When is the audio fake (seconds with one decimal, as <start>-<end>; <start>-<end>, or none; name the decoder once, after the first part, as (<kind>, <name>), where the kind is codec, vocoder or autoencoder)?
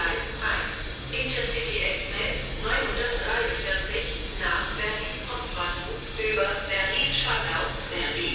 none